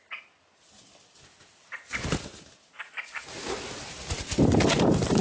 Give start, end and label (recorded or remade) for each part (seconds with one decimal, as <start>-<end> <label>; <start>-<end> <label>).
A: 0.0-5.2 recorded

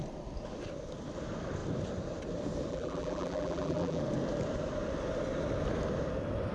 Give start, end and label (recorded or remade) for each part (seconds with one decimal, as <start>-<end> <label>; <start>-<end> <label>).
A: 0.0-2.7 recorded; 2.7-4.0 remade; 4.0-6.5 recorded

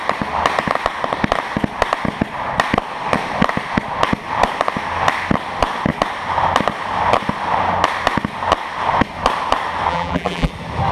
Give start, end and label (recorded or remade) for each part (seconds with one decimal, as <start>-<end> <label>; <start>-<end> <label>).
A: 0.0-9.9 recorded; 9.9-10.5 remade; 10.5-10.9 recorded

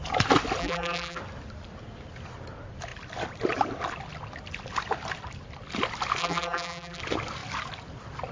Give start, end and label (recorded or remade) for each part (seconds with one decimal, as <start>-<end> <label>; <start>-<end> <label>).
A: 0.0-0.6 recorded; 0.6-1.2 remade; 1.2-6.2 recorded; 6.2-7.0 remade; 7.0-8.3 recorded